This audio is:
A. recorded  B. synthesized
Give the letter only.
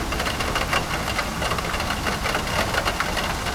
A